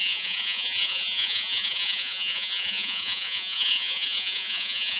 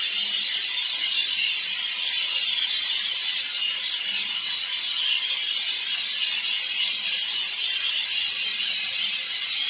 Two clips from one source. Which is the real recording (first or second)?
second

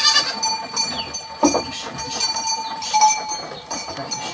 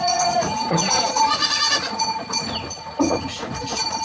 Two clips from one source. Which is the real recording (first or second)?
first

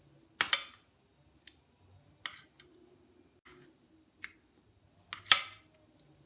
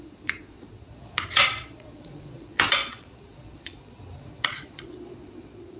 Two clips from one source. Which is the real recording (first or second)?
first